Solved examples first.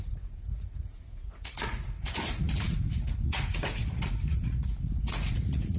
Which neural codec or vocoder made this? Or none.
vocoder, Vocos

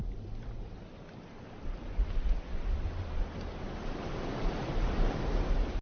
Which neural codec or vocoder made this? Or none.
none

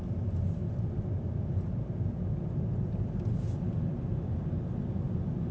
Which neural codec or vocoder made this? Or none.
none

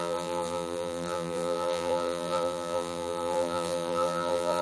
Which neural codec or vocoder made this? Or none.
vocoder, BigVGAN v2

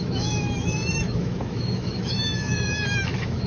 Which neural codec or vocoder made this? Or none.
autoencoder, DAC-VAE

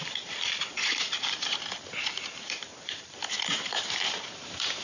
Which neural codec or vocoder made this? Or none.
vocoder, BigVGAN v2